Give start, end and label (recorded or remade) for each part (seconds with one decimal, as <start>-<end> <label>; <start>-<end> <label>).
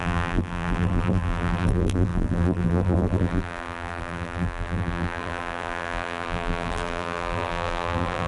0.0-8.3 remade